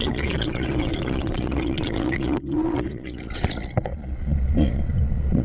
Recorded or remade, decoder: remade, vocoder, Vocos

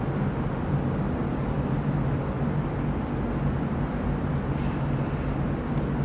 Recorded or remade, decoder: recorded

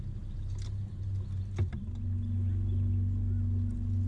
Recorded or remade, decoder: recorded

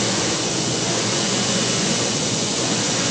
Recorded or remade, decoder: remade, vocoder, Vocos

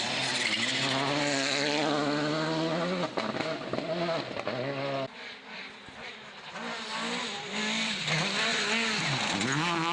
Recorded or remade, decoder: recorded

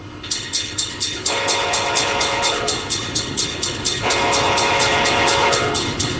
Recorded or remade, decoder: remade, codec, HILCodec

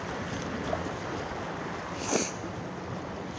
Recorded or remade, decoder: recorded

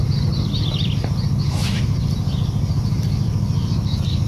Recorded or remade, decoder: recorded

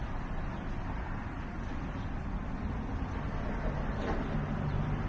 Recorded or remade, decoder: recorded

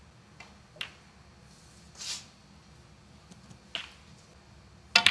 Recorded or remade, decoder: recorded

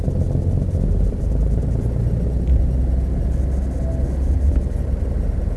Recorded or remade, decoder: recorded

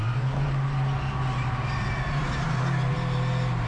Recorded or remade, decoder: recorded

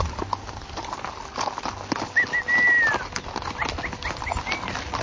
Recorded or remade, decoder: recorded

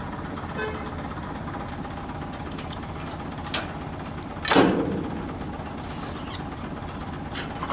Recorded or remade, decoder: recorded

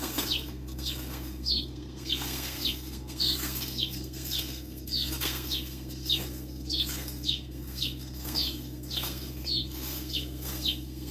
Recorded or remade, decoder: remade, codec, SNAC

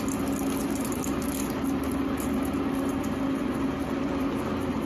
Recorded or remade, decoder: recorded